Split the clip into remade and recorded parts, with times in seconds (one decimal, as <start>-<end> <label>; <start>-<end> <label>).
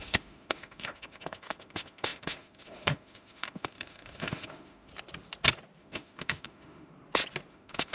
0.0-4.9 remade; 4.9-5.8 recorded; 5.8-6.9 remade; 6.9-7.5 recorded; 7.5-7.9 remade